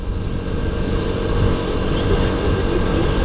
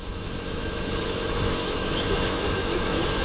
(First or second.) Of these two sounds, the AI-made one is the second